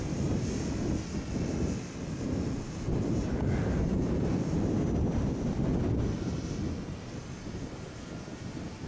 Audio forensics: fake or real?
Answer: real